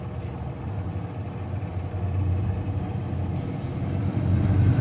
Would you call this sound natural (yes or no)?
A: yes